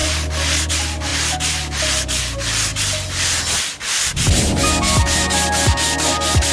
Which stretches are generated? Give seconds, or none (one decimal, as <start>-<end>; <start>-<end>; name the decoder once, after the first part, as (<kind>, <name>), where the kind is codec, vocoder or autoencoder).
none